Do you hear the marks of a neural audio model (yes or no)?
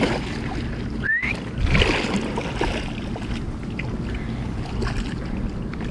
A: no